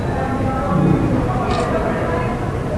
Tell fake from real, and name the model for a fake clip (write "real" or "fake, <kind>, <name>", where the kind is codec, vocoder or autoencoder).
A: real